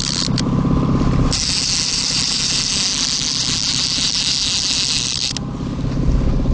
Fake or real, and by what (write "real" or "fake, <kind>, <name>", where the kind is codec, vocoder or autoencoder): real